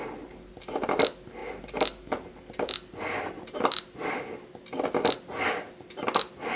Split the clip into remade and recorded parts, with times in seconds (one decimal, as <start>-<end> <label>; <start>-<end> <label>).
0.0-6.6 recorded

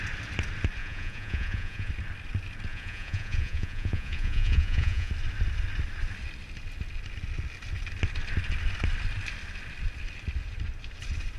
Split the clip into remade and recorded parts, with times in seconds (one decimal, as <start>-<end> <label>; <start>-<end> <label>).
0.0-0.8 recorded; 0.8-1.9 remade; 1.9-2.7 recorded; 2.7-5.1 remade; 5.1-11.4 recorded